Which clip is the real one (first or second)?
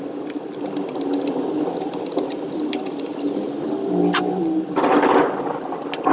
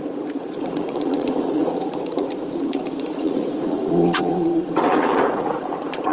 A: first